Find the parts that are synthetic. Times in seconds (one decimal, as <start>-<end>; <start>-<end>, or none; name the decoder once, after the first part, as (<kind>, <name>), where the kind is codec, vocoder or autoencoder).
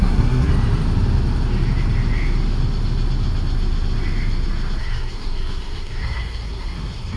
0.0-0.5 (codec, SNAC); 4.8-7.2